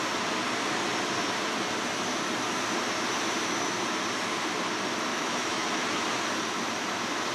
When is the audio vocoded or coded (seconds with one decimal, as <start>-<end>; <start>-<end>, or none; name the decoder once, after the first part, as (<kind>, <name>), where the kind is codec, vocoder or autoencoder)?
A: 5.1-6.0 (autoencoder, DAC-VAE)